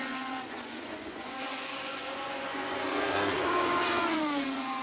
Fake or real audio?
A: fake